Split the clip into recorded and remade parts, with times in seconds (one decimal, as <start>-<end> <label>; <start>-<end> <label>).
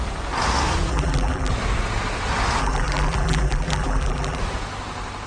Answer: 0.0-0.9 recorded; 0.9-1.5 remade; 1.5-2.6 recorded; 2.6-4.4 remade; 4.4-5.3 recorded